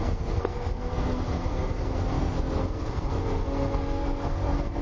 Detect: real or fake fake